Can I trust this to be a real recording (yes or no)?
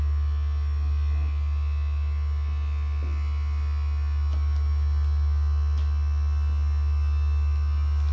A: yes